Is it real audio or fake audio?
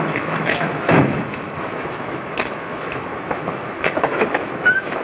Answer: fake